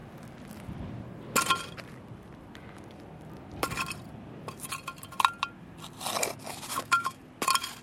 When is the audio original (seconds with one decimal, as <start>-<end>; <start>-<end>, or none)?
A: 0.0-6.7; 7.2-7.8